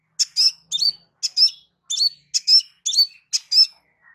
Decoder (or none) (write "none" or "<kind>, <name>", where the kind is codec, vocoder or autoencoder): none